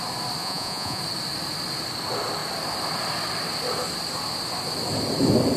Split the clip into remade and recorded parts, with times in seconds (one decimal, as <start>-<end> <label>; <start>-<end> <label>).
0.0-0.4 recorded; 0.4-1.0 remade; 1.0-5.6 recorded